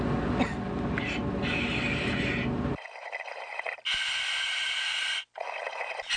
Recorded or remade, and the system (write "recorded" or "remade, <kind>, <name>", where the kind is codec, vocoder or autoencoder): recorded